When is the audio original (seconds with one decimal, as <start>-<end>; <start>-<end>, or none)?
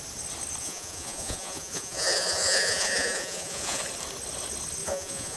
0.0-0.6; 3.8-4.8